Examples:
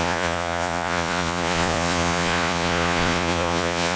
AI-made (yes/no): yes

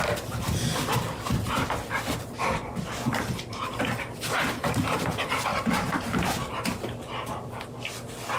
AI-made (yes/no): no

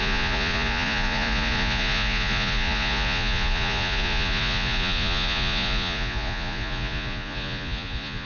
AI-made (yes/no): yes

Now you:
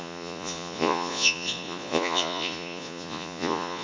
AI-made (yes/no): yes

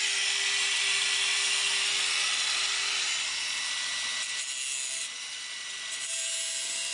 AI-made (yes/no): no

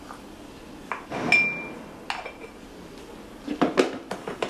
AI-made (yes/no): no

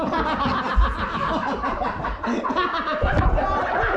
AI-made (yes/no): no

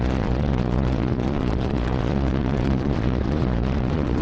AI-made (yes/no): yes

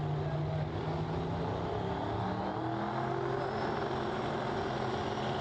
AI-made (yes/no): no